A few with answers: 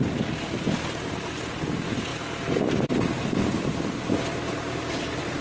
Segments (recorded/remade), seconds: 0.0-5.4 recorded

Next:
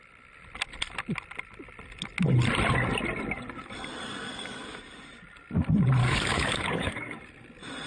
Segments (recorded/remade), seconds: 0.0-6.0 recorded; 6.0-7.2 remade; 7.2-7.9 recorded

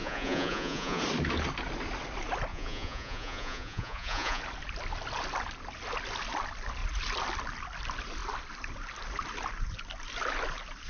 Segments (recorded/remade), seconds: 0.0-1.0 remade; 1.0-2.5 recorded; 2.5-4.4 remade; 4.4-10.9 recorded

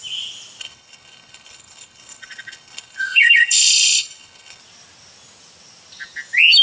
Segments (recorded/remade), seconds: 0.0-0.6 recorded; 0.6-4.6 remade; 4.6-6.6 recorded

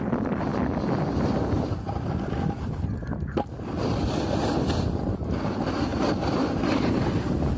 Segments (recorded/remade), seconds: 0.0-7.6 recorded

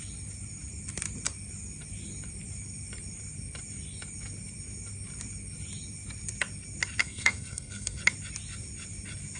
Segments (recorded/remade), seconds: 0.0-7.0 recorded; 7.0-8.0 remade; 8.0-9.4 recorded

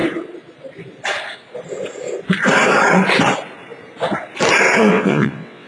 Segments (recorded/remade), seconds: 0.0-4.9 recorded; 4.9-5.7 remade